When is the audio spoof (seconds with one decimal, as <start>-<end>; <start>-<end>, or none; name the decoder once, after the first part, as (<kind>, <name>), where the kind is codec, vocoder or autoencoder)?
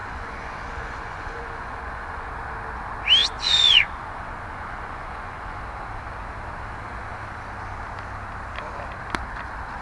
0.0-2.3 (vocoder, Vocos); 3.2-5.6